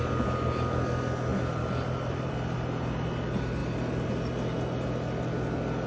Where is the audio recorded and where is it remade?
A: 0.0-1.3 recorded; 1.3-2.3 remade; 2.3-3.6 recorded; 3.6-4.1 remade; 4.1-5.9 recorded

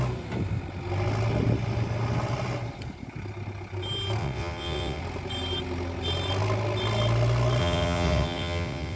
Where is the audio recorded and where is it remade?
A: 0.0-4.2 recorded; 4.2-5.0 remade; 5.0-7.6 recorded; 7.6-9.0 remade

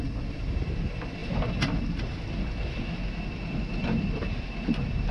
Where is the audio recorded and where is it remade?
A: 0.0-5.1 recorded

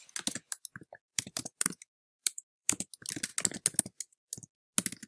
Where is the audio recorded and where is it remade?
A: 0.0-1.1 recorded; 1.1-1.7 remade; 1.7-2.2 recorded; 2.2-2.9 remade; 2.9-5.1 recorded

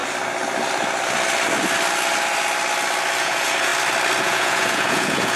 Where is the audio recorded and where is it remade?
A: 0.0-3.2 recorded; 3.2-3.7 remade; 3.7-4.2 recorded; 4.2-5.4 remade

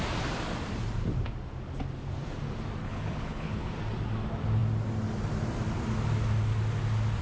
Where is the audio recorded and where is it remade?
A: 0.0-2.8 recorded; 2.8-3.7 remade; 3.7-7.2 recorded